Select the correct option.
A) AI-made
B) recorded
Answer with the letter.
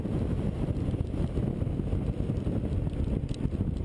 B